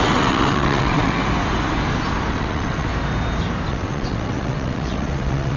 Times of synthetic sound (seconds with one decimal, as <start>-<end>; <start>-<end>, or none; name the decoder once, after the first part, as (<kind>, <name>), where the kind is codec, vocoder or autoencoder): 0.0-1.2 (vocoder, WaveNeXt); 2.3-2.9; 3.7-5.6